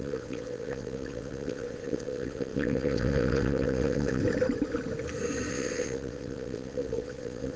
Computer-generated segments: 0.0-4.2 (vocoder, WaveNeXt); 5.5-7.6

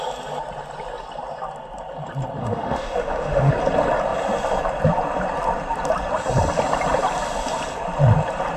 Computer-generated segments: 2.4-3.5 (autoencoder, DAC-VAE)

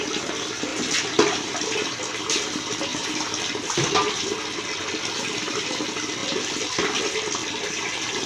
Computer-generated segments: 0.7-2.0 (vocoder, BigVGAN v2); 7.4-8.3

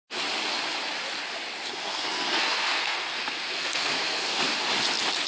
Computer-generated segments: 1.7-4.5 (codec, SNAC)

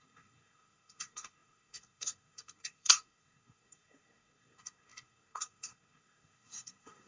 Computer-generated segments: 0.0-7.1 (codec, SNAC)

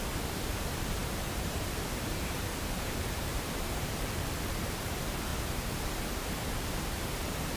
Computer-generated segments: 0.0-5.3 (vocoder, BigVGAN v2); 6.5-7.6